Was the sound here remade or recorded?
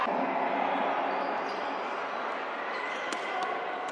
recorded